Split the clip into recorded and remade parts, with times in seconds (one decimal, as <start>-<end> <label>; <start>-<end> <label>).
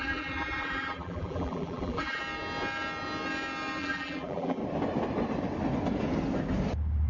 0.0-2.2 remade; 2.2-3.8 recorded; 3.8-4.6 remade; 4.6-7.1 recorded